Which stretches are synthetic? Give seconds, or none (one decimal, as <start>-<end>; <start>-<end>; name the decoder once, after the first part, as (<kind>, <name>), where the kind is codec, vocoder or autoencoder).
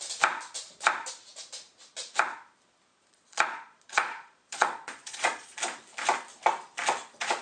2.9-5.6 (vocoder, Vocos)